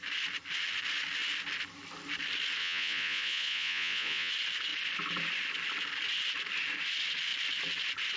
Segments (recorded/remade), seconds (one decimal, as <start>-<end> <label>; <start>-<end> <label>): 0.0-2.6 recorded; 2.6-4.3 remade; 4.3-8.2 recorded